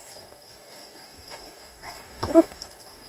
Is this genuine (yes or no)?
no